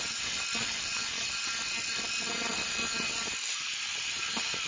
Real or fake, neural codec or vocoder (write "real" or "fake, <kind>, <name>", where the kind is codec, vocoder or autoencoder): real